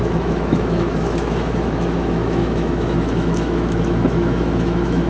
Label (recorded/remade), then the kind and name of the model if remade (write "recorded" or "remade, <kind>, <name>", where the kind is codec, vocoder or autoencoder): remade, autoencoder, DAC-VAE